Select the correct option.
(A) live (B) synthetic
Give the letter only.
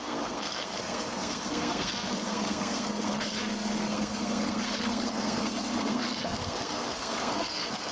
B